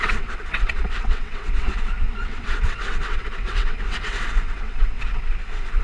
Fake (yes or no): yes